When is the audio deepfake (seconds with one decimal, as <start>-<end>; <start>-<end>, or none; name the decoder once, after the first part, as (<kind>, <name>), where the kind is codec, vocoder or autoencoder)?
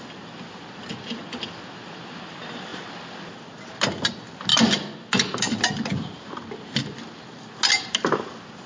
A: none